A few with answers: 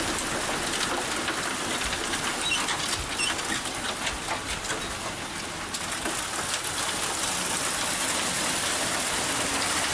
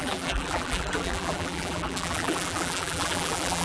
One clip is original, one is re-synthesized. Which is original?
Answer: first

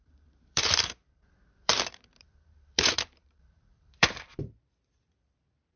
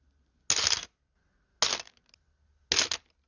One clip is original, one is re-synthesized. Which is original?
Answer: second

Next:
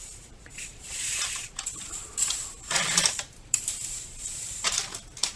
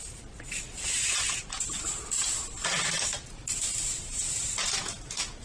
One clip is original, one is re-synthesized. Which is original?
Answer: second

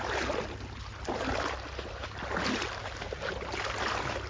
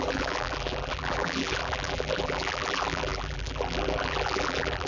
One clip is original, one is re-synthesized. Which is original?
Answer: first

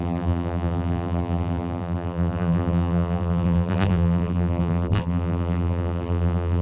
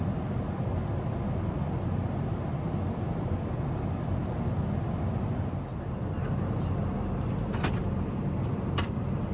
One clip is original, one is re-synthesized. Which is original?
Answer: second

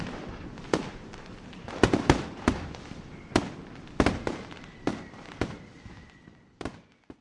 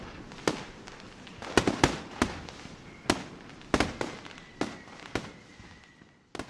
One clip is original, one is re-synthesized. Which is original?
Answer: second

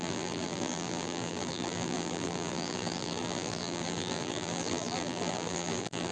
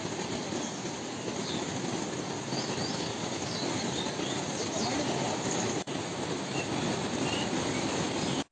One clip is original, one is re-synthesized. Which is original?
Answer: second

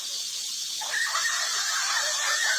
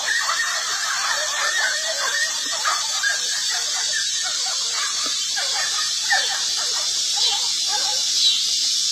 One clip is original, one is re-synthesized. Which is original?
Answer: first